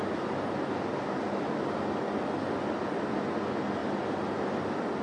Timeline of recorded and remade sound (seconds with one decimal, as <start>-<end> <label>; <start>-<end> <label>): 0.0-5.0 recorded